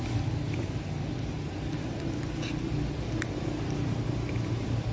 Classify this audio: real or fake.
real